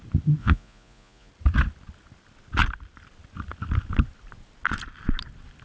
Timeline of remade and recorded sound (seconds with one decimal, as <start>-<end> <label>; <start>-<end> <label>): 0.0-0.4 recorded; 0.4-1.3 remade; 1.3-5.6 recorded